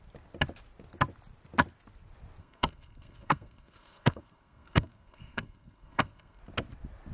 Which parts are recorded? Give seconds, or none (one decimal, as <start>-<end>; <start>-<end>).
0.0-2.4; 6.4-7.1